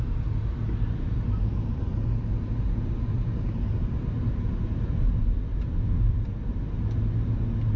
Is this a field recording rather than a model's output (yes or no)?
yes